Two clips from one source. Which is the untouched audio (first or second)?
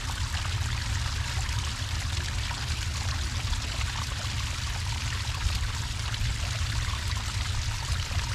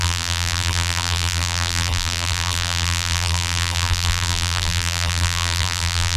first